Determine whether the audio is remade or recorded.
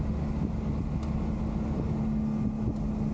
recorded